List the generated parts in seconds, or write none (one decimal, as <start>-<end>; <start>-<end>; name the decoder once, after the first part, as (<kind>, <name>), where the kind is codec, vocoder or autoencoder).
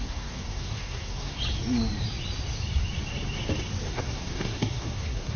0.0-1.4 (codec, SNAC); 3.9-5.4